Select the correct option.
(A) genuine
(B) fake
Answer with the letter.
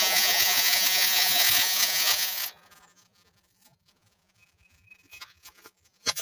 B